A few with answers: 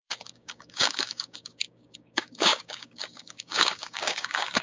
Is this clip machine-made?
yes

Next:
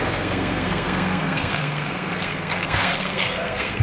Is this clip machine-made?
yes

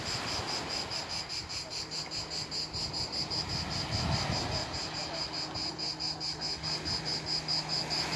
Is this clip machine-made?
no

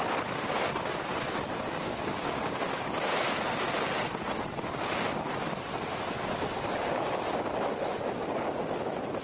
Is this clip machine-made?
no